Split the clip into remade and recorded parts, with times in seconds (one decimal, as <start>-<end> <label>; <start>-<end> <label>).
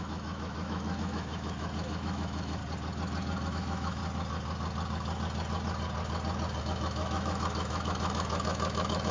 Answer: 0.0-2.6 remade; 2.6-3.5 recorded; 3.5-4.0 remade; 4.0-6.6 recorded; 6.6-9.1 remade